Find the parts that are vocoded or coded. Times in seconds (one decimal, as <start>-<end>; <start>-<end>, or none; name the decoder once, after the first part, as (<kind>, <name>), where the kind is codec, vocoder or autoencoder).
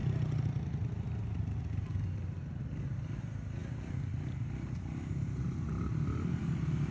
none